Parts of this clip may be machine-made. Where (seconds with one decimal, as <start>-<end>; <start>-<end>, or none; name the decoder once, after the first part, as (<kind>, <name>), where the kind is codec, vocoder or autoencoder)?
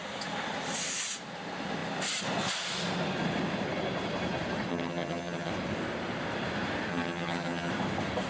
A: 4.7-5.5 (vocoder, HiFi-GAN); 6.9-7.7